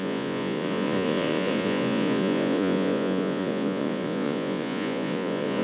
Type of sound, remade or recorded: remade